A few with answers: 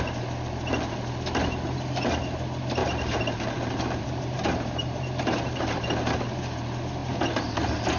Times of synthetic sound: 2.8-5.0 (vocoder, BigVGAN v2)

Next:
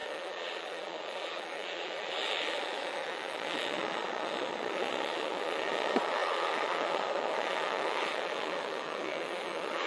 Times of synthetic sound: 0.0-9.9 (vocoder, Vocos)